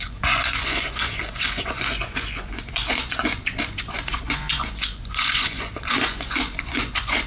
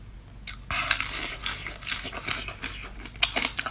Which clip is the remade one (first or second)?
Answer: first